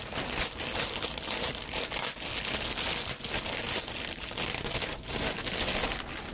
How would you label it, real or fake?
real